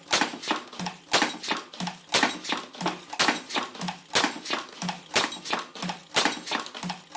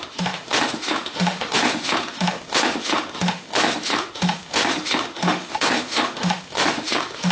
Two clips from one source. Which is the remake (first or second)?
second